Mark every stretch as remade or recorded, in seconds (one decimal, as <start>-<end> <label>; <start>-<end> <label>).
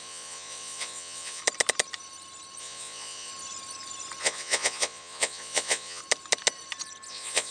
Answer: 0.0-1.4 remade; 1.4-2.6 recorded; 2.6-3.3 remade; 3.3-4.2 recorded; 4.2-6.0 remade; 6.0-7.1 recorded; 7.1-7.5 remade